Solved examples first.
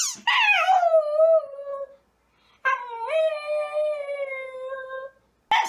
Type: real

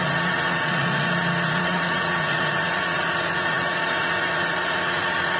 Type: fake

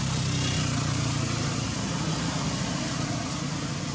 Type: real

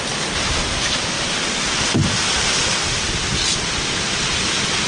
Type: real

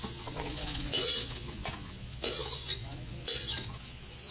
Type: fake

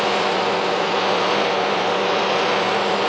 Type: real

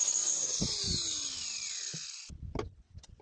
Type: real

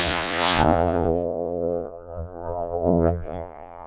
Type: fake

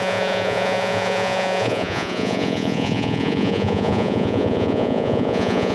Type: fake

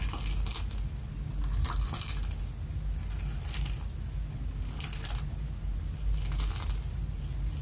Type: real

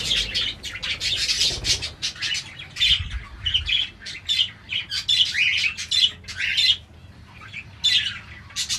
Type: real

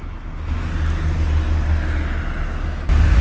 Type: real